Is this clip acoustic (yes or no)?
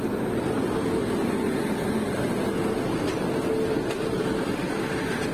yes